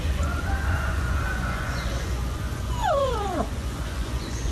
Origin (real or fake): fake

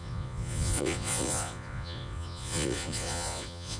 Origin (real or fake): fake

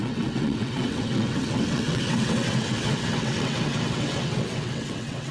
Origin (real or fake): fake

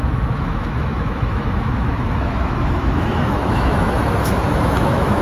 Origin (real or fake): fake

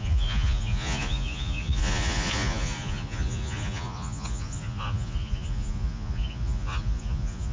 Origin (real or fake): fake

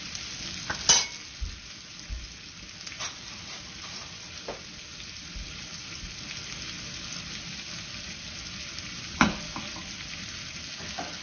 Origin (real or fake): real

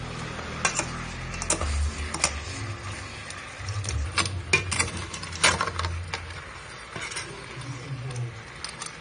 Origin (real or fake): real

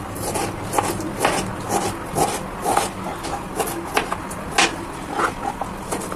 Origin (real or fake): real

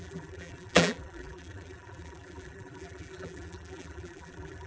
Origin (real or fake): fake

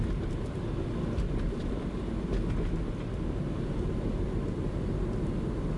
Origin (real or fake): real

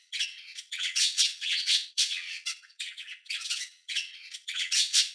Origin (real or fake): fake